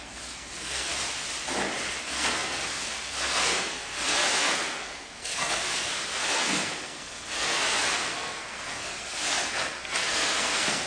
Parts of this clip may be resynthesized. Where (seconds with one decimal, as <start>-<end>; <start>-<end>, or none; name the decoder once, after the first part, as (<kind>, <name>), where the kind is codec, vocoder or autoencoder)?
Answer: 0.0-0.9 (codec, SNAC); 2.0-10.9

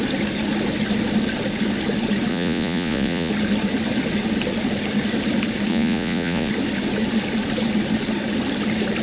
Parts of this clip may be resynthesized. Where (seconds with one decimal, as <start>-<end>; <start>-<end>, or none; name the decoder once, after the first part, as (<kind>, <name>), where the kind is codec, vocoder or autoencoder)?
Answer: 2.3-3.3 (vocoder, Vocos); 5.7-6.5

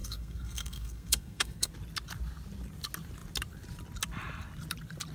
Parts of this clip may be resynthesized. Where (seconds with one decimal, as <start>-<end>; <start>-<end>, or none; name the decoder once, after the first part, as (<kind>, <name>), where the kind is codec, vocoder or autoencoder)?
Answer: 0.0-1.7 (codec, SNAC)

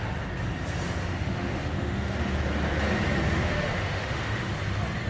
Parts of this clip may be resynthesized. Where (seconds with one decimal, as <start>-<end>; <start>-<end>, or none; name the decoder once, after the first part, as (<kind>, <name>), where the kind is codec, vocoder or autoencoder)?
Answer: 1.0-2.3 (autoencoder, DAC-VAE); 3.2-4.5

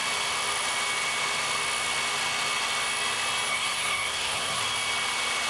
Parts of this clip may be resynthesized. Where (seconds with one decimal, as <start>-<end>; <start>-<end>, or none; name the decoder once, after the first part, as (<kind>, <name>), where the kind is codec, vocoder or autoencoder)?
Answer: 3.5-4.6 (codec, SNAC)